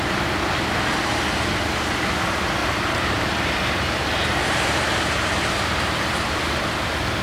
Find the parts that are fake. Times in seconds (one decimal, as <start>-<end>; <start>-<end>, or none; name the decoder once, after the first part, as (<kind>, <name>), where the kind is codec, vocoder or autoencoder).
2.6-5.9 (vocoder, BigVGAN v2)